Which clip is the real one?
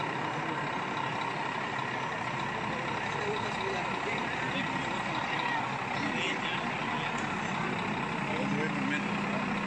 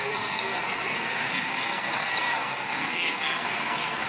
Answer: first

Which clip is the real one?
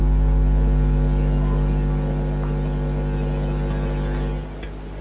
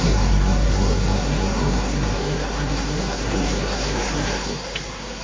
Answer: first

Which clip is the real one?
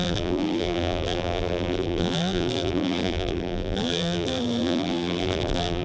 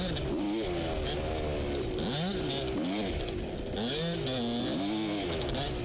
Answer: second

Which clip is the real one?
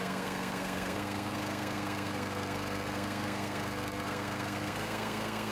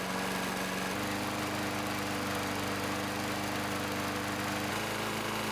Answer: second